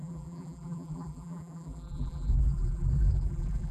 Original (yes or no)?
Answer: no